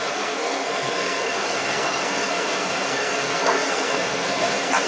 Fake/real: fake